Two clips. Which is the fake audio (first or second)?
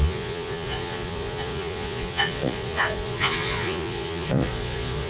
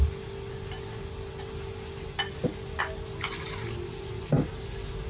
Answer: first